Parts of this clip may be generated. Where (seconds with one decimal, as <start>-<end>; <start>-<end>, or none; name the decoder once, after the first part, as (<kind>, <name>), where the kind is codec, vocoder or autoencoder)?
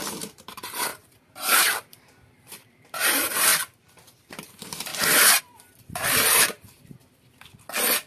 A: 0.0-3.5 (vocoder, BigVGAN v2); 4.3-4.9; 5.4-7.0